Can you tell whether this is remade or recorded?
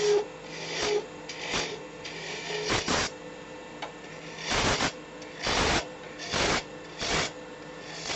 recorded